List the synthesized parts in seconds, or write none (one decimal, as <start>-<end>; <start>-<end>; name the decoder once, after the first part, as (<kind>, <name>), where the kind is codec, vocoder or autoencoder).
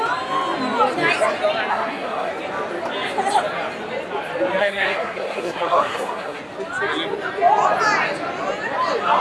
1.7-2.3 (codec, SNAC); 4.6-6.4